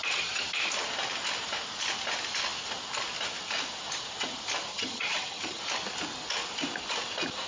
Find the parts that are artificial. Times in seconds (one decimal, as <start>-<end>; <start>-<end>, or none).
4.7-5.6